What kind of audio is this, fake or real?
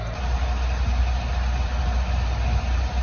real